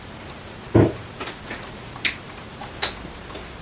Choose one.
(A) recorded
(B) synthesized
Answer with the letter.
A